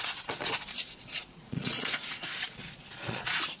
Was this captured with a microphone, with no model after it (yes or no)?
no